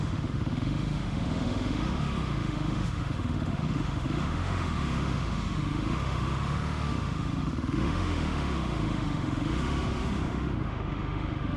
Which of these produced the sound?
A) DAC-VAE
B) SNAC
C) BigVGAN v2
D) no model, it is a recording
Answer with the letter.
A